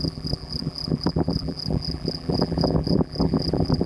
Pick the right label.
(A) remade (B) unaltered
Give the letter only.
A